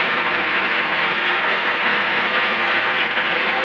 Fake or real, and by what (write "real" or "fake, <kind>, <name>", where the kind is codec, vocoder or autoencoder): fake, codec, SNAC